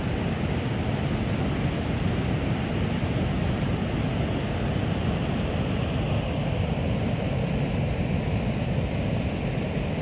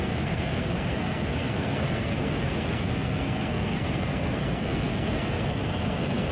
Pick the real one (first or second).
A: first